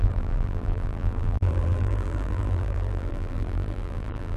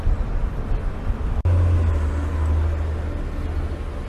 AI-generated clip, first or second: first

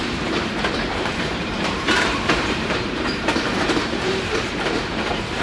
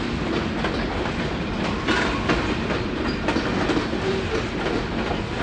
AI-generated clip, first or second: first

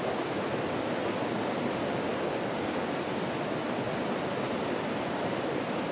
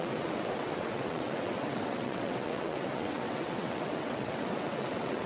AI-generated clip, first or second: second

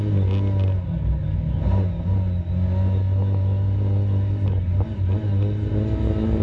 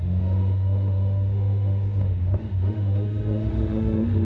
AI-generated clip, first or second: second